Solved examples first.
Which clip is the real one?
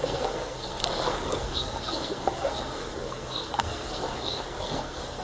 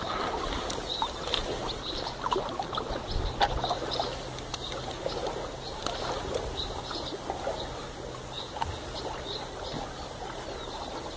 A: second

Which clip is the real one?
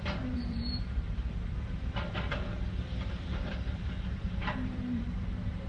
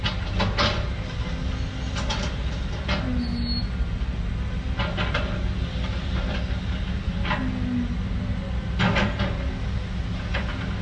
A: second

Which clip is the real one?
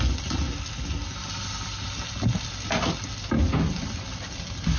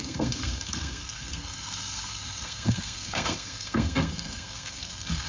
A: first